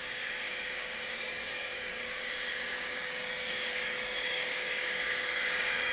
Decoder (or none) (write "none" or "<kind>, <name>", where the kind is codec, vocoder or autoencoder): codec, DAC